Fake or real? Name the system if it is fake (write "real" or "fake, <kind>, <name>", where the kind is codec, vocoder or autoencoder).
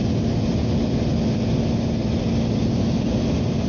real